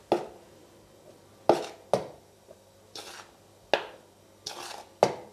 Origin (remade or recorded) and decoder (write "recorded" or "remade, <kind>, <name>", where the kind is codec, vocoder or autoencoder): recorded